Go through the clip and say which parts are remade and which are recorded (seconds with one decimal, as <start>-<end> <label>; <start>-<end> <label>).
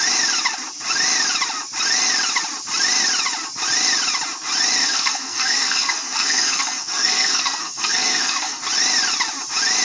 0.0-4.8 recorded; 4.8-8.6 remade; 8.6-9.8 recorded